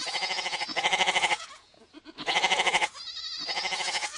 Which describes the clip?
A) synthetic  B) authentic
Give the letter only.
A